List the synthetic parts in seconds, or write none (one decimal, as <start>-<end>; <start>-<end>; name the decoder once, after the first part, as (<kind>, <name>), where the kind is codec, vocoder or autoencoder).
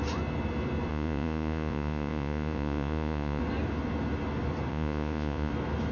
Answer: 0.9-3.4 (vocoder, Vocos); 4.7-5.5